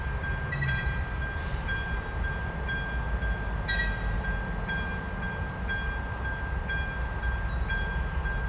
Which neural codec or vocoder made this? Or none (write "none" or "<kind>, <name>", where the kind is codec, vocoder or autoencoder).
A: none